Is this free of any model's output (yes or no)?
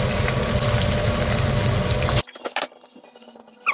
yes